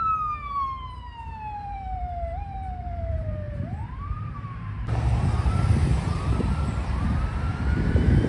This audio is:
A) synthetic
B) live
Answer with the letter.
A